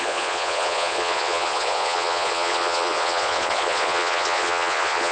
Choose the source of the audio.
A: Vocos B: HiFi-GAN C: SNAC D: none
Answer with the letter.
A